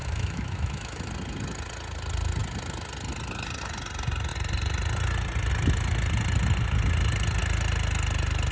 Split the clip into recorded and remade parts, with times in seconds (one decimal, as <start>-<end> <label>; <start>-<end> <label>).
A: 0.0-1.1 remade; 1.1-8.5 recorded